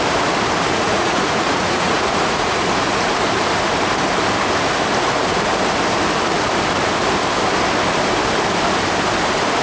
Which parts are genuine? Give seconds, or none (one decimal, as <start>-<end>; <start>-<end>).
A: 0.0-0.7; 2.6-9.6

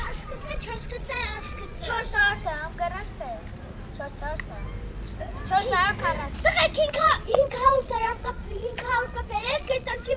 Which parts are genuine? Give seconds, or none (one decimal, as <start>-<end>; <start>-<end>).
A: 2.2-6.9